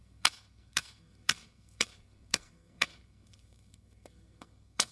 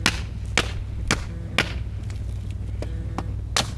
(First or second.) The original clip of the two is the second